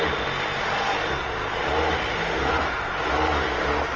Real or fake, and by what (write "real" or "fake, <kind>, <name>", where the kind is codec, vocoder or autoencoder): real